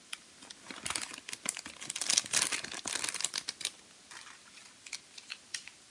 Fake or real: real